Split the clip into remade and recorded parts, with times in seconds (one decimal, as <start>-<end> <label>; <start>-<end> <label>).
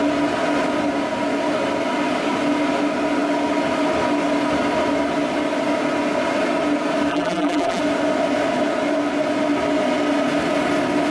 0.0-7.1 recorded; 7.1-7.8 remade; 7.8-11.1 recorded